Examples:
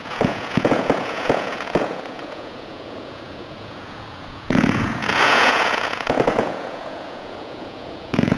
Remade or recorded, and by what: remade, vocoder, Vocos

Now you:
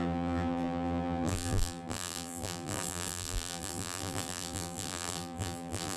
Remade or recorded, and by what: remade, vocoder, BigVGAN v2